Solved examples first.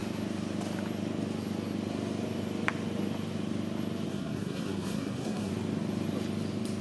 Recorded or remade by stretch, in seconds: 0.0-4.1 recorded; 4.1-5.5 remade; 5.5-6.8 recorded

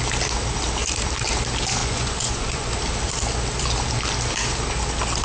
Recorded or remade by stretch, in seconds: 0.0-1.8 recorded; 1.8-2.7 remade; 2.7-5.2 recorded

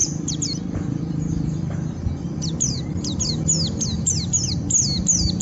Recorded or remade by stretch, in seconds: 0.0-3.2 remade; 3.2-5.4 recorded

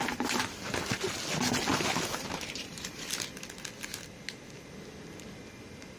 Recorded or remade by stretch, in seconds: 0.0-1.7 recorded; 1.7-3.1 remade; 3.1-6.0 recorded